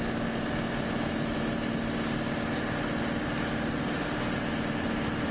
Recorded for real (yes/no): yes